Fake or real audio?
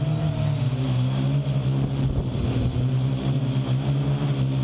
real